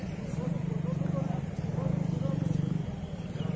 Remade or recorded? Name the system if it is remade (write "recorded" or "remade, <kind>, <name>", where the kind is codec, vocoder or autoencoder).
remade, vocoder, BigVGAN v2